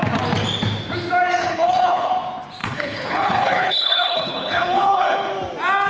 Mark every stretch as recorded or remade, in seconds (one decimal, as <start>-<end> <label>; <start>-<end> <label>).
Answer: 0.0-1.4 recorded; 1.4-2.2 remade; 2.2-2.6 recorded; 2.6-5.3 remade; 5.3-5.9 recorded

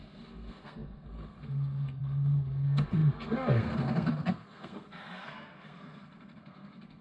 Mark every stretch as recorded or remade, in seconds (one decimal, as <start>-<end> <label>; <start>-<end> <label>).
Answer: 0.0-7.0 remade

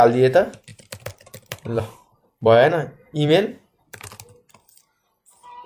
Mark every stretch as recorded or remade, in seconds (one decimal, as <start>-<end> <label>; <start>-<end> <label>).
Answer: 0.0-0.7 recorded; 0.7-4.1 remade; 4.1-5.7 recorded